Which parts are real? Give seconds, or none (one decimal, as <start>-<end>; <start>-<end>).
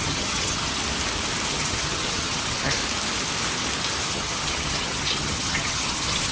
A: 0.8-1.5; 2.8-4.1